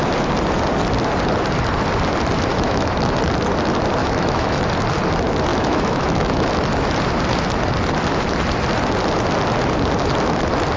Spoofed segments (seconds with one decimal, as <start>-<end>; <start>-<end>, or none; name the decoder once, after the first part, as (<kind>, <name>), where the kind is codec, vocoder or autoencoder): 2.5-3.1 (autoencoder, DAC-VAE); 4.0-4.6; 5.5-6.5